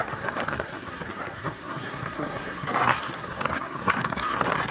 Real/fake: fake